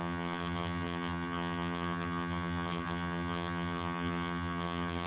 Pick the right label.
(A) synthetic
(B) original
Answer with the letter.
A